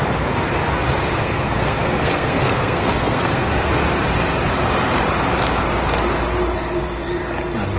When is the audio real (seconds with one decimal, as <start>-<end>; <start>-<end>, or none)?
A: 0.0-1.2; 3.7-7.8